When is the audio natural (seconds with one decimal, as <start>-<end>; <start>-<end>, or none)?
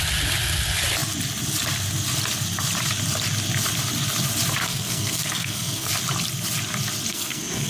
0.0-4.6; 5.9-7.1